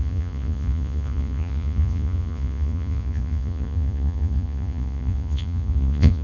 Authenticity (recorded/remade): remade